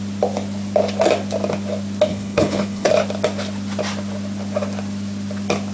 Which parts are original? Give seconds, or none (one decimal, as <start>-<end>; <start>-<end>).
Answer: 0.0-2.1; 2.9-5.7